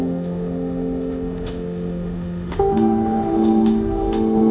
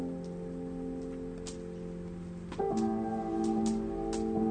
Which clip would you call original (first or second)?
second